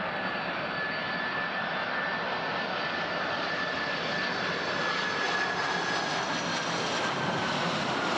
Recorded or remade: recorded